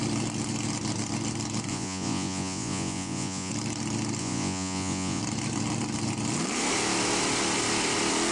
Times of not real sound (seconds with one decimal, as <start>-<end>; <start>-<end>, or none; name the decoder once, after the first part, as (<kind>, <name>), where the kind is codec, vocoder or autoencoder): 1.7-3.5 (vocoder, Vocos); 4.2-5.2